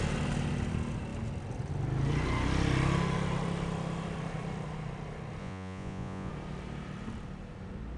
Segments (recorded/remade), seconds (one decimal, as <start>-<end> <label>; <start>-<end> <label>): 0.0-5.4 recorded; 5.4-6.3 remade; 6.3-8.0 recorded